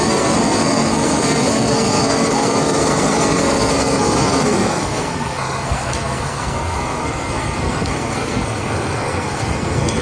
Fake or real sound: fake